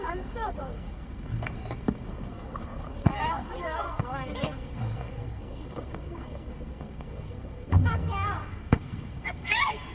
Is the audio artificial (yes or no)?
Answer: yes